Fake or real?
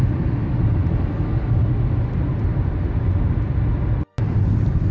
real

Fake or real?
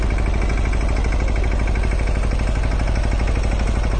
real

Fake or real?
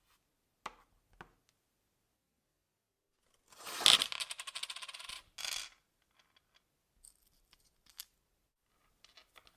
real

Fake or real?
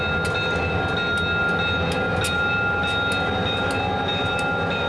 real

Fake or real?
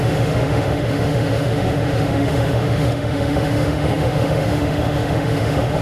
fake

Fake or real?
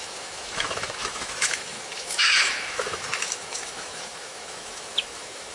fake